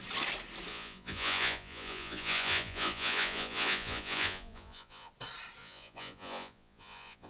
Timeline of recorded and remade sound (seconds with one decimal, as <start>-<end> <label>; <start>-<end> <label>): 0.0-0.7 recorded; 0.7-5.1 remade; 5.1-5.6 recorded; 5.6-7.3 remade